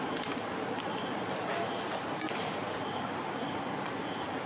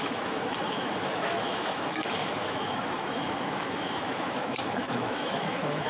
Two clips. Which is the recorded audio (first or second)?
first